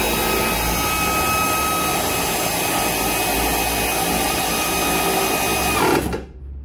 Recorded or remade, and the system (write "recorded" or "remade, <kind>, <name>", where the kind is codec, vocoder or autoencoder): recorded